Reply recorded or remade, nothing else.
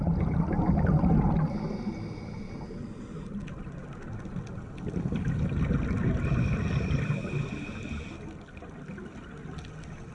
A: recorded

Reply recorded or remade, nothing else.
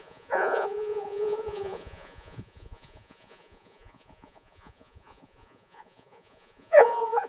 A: remade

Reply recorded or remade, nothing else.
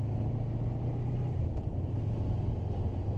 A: recorded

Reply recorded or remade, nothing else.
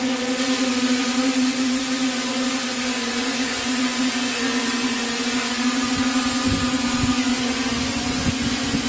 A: remade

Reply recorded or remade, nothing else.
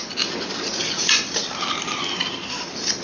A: recorded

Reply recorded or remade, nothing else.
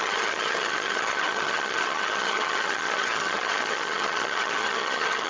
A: remade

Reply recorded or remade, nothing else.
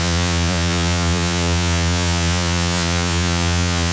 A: remade